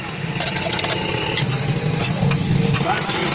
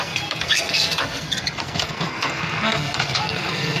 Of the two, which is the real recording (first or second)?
first